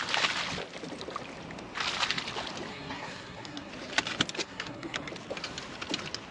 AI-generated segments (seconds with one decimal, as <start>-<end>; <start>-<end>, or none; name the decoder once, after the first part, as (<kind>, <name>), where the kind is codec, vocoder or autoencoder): 2.7-3.7 (codec, SNAC); 4.4-5.1